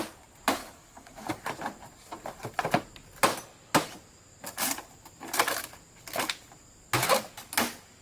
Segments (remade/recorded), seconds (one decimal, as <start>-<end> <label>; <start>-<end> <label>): 0.0-0.6 recorded; 0.6-1.4 remade; 1.4-8.0 recorded